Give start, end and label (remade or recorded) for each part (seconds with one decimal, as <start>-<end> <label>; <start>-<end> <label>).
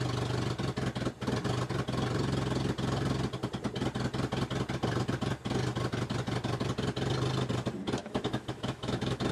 0.0-8.0 recorded; 8.0-9.3 remade